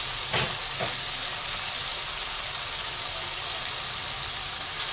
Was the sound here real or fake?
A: real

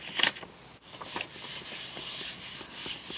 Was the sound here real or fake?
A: real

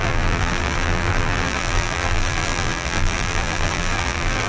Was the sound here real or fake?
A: fake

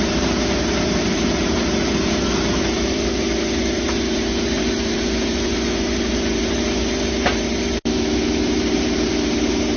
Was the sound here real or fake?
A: fake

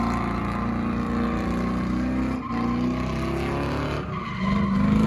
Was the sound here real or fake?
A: real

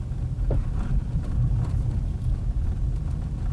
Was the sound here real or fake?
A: real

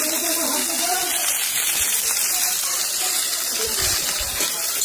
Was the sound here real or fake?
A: fake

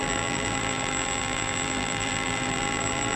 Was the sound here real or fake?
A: fake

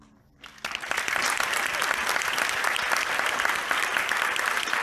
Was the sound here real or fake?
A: fake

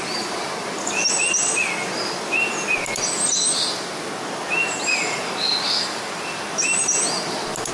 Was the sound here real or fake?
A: real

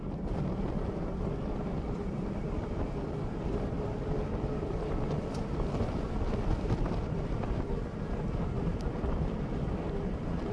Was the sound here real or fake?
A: fake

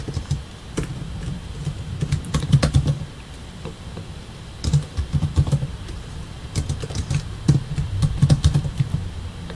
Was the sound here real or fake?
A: fake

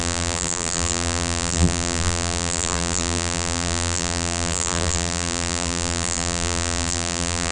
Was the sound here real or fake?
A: fake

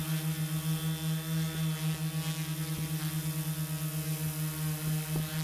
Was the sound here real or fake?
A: real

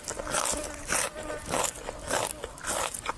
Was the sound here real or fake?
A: real